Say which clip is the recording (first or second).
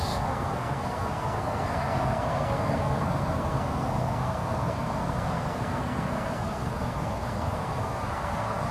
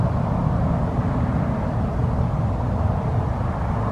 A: second